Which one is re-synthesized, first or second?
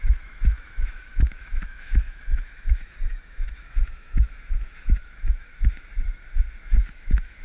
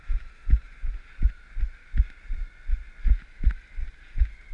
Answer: first